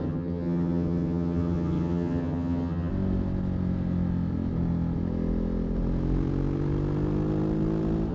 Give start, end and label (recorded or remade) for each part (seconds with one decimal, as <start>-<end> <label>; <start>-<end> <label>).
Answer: 0.0-2.9 remade; 2.9-8.1 recorded